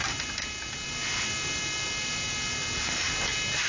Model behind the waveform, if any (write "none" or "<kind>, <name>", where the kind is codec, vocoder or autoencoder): none